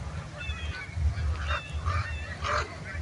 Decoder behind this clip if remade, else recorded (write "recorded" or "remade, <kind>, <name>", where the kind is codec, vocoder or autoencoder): recorded